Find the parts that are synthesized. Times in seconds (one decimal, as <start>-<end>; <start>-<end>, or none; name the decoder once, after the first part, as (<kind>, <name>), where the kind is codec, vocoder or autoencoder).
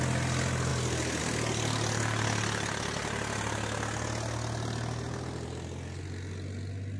none